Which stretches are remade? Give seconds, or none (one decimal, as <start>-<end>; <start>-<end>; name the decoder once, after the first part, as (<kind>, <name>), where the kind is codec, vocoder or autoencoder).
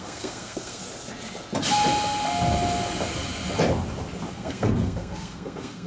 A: 0.0-0.8 (codec, SNAC); 4.3-5.9